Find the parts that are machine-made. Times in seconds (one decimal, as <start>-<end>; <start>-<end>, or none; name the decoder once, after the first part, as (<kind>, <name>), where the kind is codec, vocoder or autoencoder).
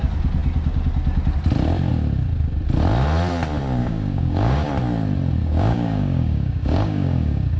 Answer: 3.8-4.7 (codec, DAC); 5.4-7.6